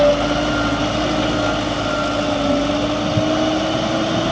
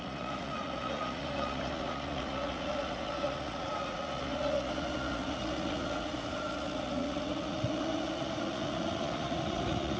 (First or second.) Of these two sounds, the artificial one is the second